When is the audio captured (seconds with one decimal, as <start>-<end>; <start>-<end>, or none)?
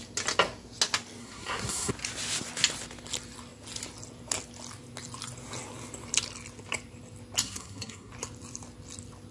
0.0-1.2; 1.9-7.4; 8.1-9.3